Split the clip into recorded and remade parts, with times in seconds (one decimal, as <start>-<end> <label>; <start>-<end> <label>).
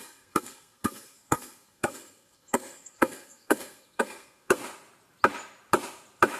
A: 0.0-4.6 remade; 4.6-6.4 recorded